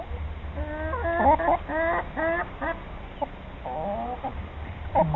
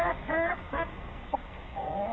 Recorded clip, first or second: first